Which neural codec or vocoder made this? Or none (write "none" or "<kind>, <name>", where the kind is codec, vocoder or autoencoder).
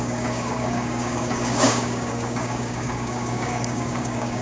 codec, DAC